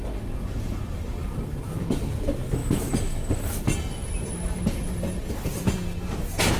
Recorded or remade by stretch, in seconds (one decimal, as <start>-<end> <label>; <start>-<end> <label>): 0.0-4.0 recorded; 4.0-4.6 remade; 4.6-6.6 recorded

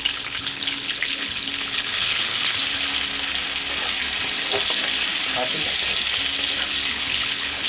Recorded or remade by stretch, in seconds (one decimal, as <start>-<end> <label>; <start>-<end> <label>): 0.0-2.6 remade; 2.6-6.9 recorded; 6.9-7.7 remade

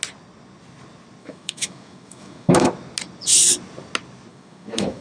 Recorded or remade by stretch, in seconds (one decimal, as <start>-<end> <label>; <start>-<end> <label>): 0.0-1.2 recorded; 1.2-2.7 remade; 2.7-4.3 recorded; 4.3-5.0 remade